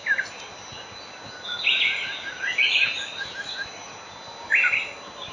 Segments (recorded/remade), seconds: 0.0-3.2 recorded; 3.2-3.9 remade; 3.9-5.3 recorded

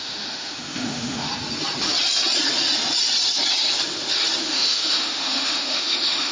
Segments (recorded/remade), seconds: 0.0-1.3 remade; 1.3-4.4 recorded; 4.4-6.3 remade

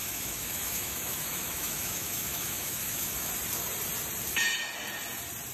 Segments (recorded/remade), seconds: 0.0-3.3 remade; 3.3-5.5 recorded

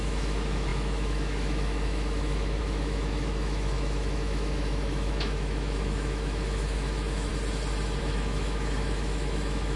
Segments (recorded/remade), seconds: 0.0-7.3 remade; 7.3-8.0 recorded; 8.0-9.8 remade